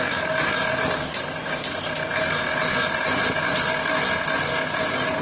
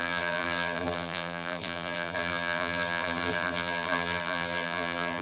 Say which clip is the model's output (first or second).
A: second